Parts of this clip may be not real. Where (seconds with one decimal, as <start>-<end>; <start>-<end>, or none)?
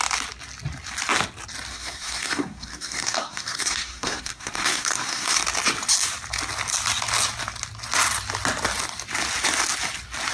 1.7-5.4